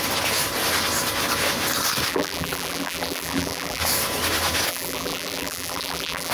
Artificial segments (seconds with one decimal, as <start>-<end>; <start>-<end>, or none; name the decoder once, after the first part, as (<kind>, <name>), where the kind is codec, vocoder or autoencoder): 2.1-3.8 (vocoder, BigVGAN v2); 4.7-6.3

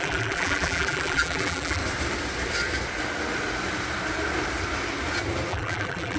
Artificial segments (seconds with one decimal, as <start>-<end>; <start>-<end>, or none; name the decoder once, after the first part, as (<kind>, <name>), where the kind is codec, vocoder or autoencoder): 0.0-1.8 (vocoder, BigVGAN v2); 5.5-6.2

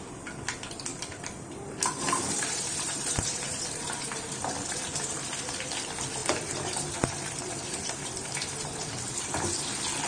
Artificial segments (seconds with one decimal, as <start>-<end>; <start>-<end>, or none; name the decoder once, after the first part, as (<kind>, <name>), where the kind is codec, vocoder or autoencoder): 0.9-5.5 (vocoder, BigVGAN v2); 6.2-8.9